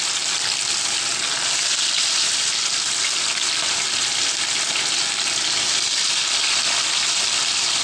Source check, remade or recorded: recorded